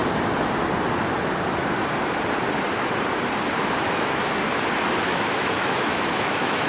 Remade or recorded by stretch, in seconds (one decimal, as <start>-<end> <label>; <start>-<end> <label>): 0.0-3.8 recorded; 3.8-4.2 remade; 4.2-5.0 recorded; 5.0-6.7 remade